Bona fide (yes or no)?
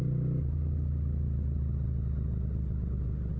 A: yes